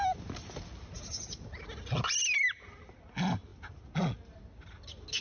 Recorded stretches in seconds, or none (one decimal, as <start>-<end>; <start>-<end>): 0.0-5.2